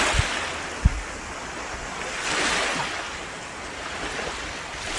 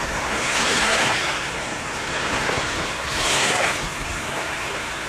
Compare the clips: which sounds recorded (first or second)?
first